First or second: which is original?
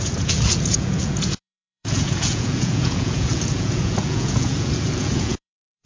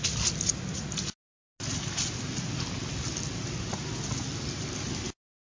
second